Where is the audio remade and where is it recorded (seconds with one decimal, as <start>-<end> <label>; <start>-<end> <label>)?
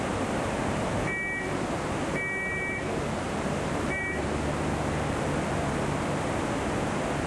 0.0-2.5 recorded; 2.5-4.3 remade; 4.3-7.3 recorded